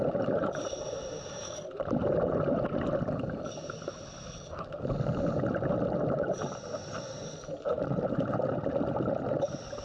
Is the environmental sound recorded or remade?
recorded